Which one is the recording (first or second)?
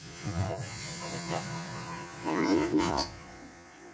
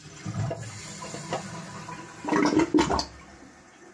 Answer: second